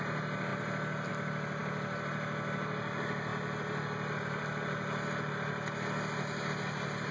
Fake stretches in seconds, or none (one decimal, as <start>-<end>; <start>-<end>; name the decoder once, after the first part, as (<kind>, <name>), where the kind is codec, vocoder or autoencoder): none